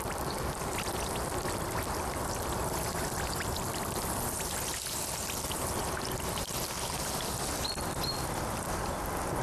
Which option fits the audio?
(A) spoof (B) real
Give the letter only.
B